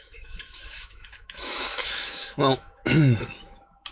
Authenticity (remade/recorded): remade